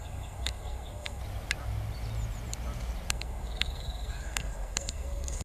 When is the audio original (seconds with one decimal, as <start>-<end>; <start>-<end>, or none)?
1.2-3.1